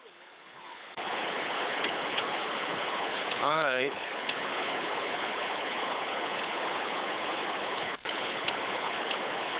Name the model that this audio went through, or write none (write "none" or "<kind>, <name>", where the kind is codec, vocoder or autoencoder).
codec, HILCodec